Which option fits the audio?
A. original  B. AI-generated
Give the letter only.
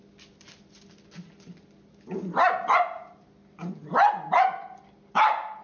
A